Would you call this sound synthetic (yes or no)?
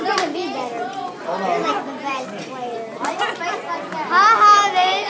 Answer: no